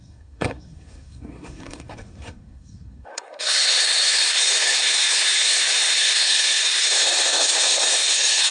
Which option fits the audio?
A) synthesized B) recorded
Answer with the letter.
A